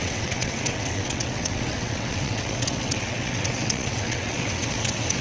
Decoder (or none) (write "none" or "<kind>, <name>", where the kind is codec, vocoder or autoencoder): vocoder, WaveNeXt